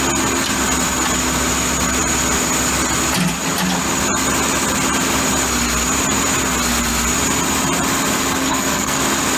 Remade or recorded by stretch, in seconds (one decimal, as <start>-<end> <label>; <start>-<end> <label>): 0.0-8.4 recorded; 8.4-9.0 remade; 9.0-9.4 recorded

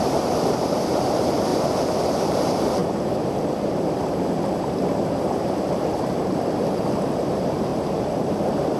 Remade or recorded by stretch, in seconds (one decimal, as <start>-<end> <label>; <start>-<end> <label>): 0.0-1.5 remade; 1.5-2.1 recorded; 2.1-8.8 remade